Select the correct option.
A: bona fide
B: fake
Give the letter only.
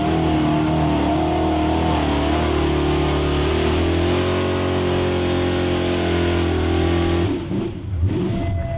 A